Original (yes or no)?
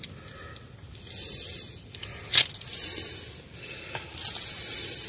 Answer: yes